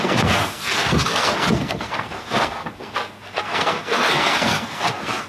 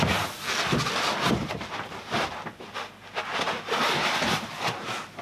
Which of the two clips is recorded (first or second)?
second